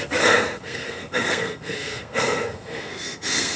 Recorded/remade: remade